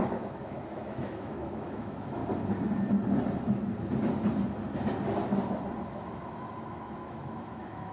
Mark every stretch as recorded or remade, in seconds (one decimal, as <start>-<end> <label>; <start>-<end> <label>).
0.0-2.2 remade; 2.2-5.9 recorded; 5.9-7.9 remade